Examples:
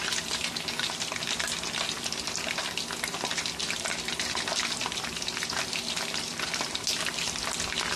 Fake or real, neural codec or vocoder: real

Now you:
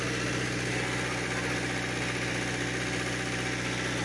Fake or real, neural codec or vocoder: real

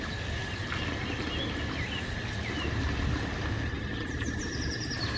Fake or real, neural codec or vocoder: real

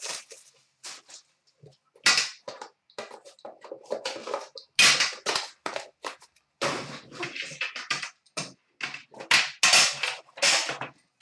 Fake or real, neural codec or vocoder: real